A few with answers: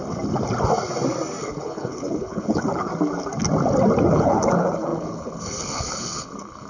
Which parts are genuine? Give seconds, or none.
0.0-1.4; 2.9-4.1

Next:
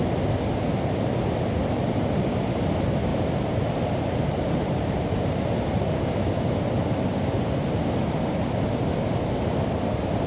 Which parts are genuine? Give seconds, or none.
0.0-3.1; 6.3-10.3

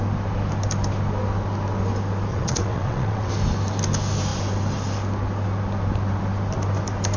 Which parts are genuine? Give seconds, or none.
0.0-2.3; 3.3-7.2